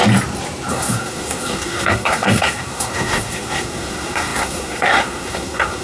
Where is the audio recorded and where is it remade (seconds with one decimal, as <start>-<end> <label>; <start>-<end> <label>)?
0.0-0.7 recorded; 0.7-5.8 remade